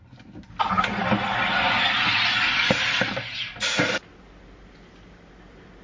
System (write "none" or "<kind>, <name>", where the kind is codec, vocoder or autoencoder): none